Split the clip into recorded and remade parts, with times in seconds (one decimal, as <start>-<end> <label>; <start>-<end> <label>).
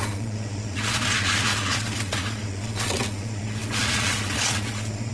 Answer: 0.0-5.1 remade